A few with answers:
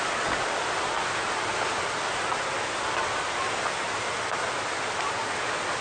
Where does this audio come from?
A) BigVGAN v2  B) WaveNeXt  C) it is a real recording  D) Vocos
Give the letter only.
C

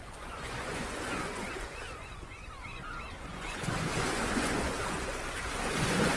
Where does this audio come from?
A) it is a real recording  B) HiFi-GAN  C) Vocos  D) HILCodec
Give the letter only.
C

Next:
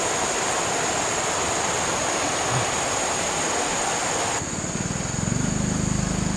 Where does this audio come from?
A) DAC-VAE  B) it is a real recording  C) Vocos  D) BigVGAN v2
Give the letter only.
B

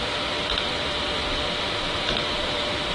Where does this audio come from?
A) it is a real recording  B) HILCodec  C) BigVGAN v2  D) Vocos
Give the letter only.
A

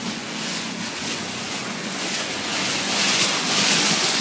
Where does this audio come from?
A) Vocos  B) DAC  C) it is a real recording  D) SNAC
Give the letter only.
A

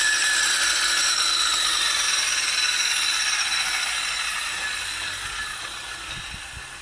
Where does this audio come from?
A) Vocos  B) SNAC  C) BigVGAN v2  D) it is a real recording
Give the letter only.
D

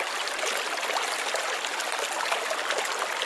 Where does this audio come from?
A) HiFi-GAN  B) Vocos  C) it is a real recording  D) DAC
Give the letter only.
C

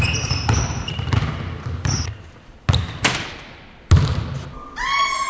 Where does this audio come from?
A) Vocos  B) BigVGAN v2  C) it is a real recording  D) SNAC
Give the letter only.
C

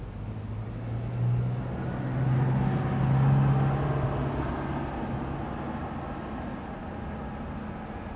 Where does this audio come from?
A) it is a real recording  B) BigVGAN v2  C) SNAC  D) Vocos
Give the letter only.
A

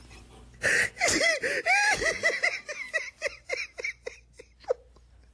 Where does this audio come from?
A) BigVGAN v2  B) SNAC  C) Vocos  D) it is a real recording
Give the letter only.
D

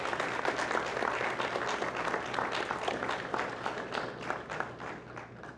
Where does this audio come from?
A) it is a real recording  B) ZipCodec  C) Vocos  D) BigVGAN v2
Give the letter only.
A